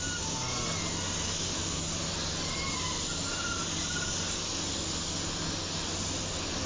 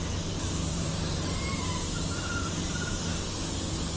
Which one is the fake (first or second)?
second